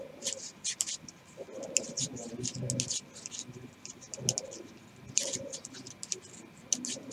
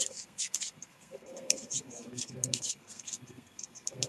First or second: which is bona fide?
first